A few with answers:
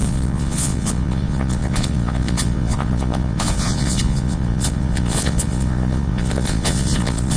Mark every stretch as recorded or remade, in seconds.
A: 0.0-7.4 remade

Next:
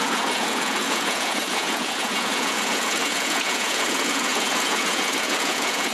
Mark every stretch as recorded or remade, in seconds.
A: 0.0-5.9 remade

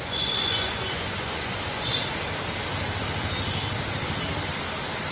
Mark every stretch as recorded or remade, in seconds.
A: 0.0-1.9 remade; 1.9-5.1 recorded